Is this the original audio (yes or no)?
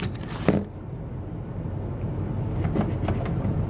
yes